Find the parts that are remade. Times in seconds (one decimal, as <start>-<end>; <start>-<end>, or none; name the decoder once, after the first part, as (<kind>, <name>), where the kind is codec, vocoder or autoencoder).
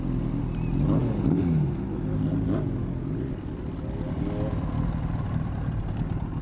none